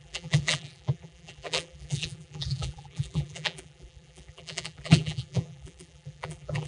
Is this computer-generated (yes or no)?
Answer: yes